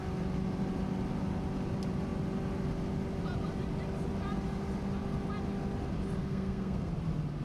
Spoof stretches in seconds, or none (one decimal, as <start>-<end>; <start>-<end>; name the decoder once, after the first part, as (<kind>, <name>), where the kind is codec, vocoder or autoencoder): 6.2-6.9 (codec, SNAC)